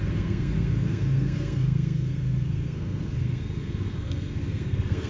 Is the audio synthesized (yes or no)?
yes